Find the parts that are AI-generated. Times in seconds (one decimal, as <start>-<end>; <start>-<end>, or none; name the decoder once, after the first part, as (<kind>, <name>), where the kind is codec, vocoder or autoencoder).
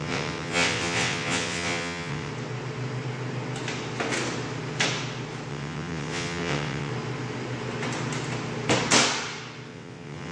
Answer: 0.0-2.3 (vocoder, WaveNeXt); 5.5-6.9; 9.7-10.3